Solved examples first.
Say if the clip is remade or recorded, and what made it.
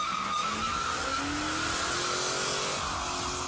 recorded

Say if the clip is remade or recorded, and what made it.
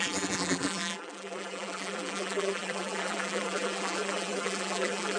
remade, vocoder, BigVGAN v2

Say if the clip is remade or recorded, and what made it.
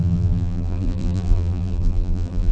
remade, vocoder, BigVGAN v2